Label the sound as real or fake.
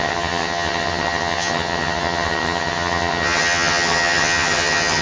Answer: fake